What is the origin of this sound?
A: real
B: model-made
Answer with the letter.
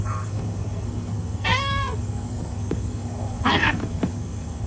B